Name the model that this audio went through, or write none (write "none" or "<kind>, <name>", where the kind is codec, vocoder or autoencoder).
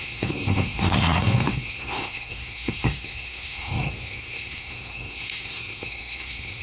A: codec, SNAC